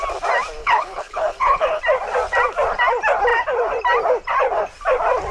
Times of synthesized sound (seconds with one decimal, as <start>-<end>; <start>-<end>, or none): 0.6-1.8